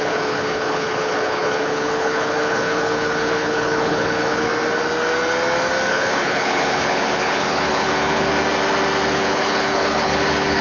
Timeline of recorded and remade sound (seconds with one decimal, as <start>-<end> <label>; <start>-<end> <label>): 0.0-4.5 remade; 4.5-5.9 recorded; 5.9-8.3 remade; 8.3-9.1 recorded; 9.1-10.6 remade